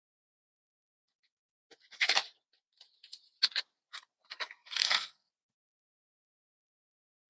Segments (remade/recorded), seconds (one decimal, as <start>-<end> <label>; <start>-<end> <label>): 0.0-4.8 recorded; 4.8-5.3 remade; 5.3-7.3 recorded

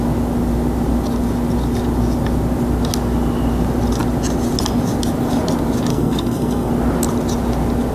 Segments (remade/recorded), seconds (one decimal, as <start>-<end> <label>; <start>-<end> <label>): 0.0-5.9 recorded; 5.9-6.7 remade; 6.7-7.9 recorded

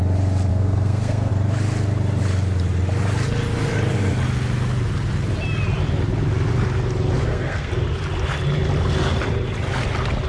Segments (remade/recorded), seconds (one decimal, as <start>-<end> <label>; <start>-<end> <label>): 0.0-0.5 recorded; 0.5-1.3 remade; 1.3-7.2 recorded; 7.2-7.7 remade; 7.7-10.3 recorded

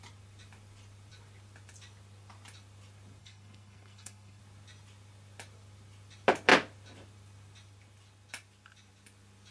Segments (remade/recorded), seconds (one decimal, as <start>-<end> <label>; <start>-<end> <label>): 0.0-3.2 recorded; 3.2-4.4 remade; 4.4-9.5 recorded

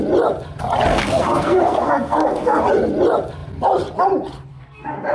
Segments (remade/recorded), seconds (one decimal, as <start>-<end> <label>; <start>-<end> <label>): 0.0-0.9 recorded; 0.9-2.6 remade; 2.6-4.5 recorded; 4.5-5.1 remade

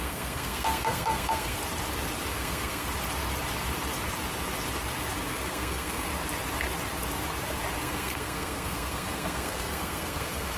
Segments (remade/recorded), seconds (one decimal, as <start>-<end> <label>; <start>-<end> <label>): 0.0-1.6 remade; 1.6-2.3 recorded; 2.3-2.9 remade; 2.9-5.3 recorded; 5.3-6.1 remade; 6.1-7.8 recorded; 7.8-10.6 remade

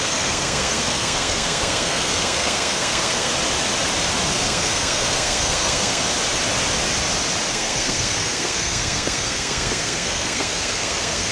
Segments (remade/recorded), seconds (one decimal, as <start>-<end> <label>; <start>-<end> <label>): 0.0-3.3 remade; 3.3-4.3 recorded; 4.3-6.0 remade; 6.0-7.5 recorded; 7.5-11.3 remade